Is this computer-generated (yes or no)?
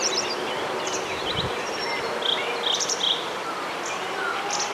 yes